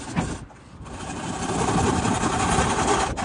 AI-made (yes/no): no